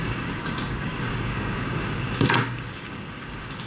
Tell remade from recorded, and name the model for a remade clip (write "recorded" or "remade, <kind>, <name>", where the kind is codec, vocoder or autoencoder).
remade, codec, DAC